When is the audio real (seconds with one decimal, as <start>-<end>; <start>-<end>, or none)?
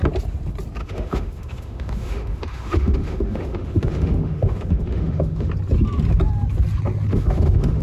0.0-0.8; 5.5-7.1